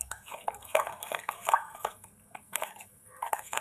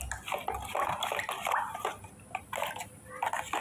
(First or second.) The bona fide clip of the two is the second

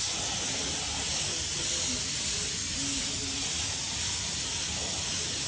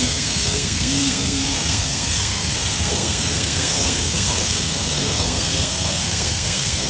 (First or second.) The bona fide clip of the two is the first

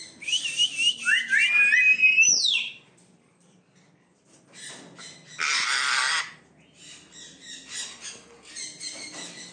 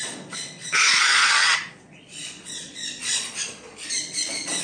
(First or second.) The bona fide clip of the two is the first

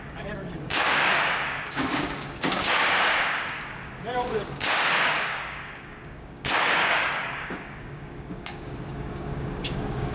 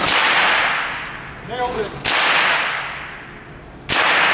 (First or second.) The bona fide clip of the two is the second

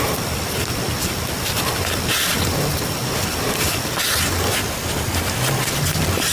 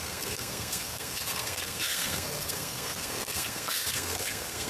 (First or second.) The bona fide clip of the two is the first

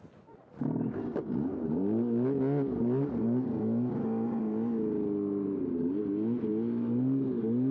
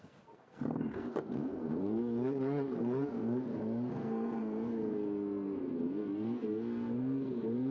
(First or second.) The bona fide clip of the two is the first